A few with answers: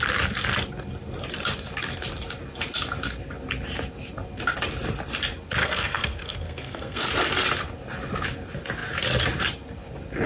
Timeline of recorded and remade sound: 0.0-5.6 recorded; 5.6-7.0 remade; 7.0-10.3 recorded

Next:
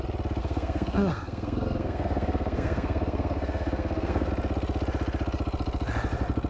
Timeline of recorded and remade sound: 0.0-0.4 recorded; 0.4-4.3 remade; 4.3-6.5 recorded

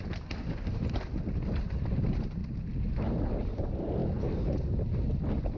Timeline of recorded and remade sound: 0.0-0.4 recorded; 0.4-1.7 remade; 1.7-2.4 recorded; 2.4-3.1 remade; 3.1-5.6 recorded

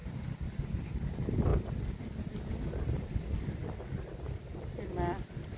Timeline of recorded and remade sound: 0.0-5.6 recorded

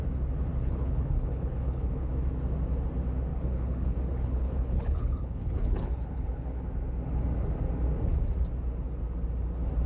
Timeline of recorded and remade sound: 0.0-0.5 recorded; 0.5-2.1 remade; 2.1-3.3 recorded; 3.3-6.6 remade; 6.6-9.9 recorded